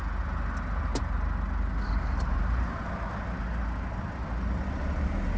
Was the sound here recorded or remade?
recorded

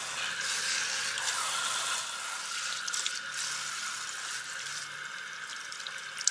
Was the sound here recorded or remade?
recorded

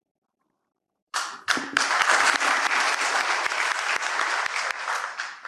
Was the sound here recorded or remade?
remade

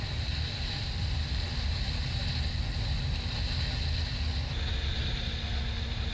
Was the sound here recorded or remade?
recorded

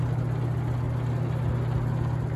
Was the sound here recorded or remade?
recorded